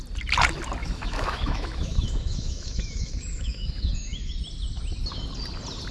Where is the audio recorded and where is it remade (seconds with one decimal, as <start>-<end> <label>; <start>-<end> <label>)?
0.0-0.8 recorded; 0.8-4.3 remade; 4.3-5.9 recorded